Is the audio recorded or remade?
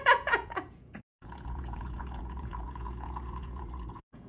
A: remade